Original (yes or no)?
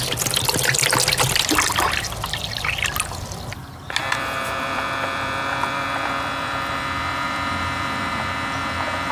no